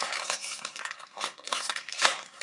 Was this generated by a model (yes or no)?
yes